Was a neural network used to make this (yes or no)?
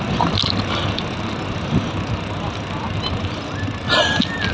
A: no